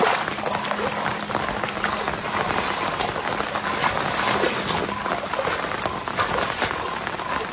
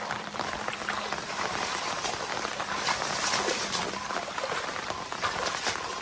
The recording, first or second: first